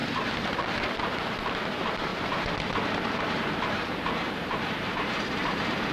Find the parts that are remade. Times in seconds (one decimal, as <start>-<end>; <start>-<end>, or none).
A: 0.0-5.9